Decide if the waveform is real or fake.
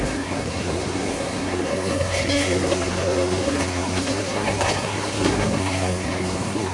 fake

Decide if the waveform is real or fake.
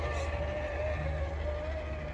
real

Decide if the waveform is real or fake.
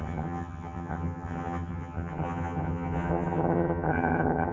fake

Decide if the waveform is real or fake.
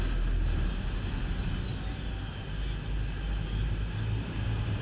real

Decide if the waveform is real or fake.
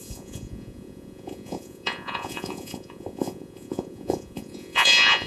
fake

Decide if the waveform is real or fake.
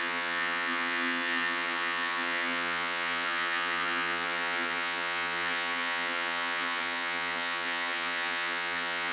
fake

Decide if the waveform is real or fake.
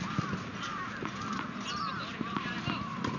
real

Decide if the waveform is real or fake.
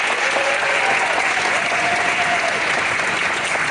fake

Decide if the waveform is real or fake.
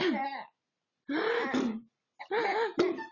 real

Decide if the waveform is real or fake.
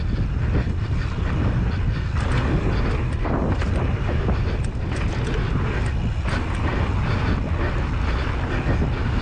real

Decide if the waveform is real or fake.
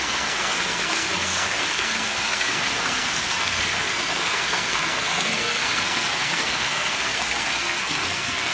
fake